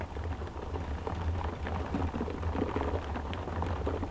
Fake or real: real